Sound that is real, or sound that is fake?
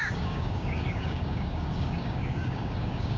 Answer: fake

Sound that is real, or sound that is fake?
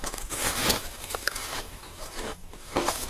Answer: fake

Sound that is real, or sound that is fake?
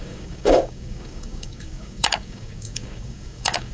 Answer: fake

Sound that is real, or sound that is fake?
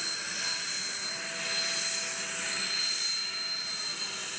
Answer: real